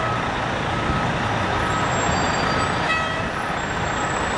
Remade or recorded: recorded